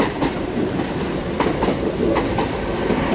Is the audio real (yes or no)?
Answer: yes